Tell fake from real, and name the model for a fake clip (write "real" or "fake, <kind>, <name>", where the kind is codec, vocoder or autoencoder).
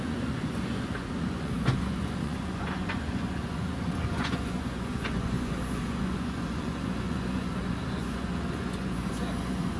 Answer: fake, vocoder, Vocos